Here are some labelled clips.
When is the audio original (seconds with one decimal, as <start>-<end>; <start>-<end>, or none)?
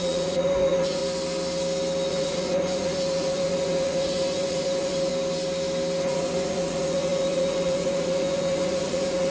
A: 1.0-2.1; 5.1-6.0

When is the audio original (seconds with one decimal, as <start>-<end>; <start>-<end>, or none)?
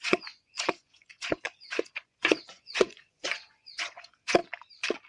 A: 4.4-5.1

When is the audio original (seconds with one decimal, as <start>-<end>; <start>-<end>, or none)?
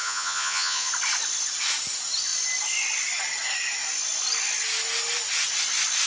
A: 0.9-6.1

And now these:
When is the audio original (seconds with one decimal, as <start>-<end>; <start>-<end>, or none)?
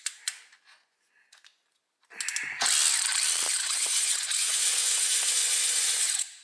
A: 1.5-3.5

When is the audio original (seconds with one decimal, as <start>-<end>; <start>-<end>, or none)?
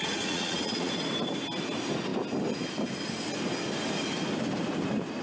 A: 0.9-5.2